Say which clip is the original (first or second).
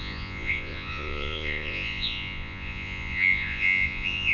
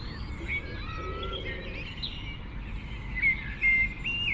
second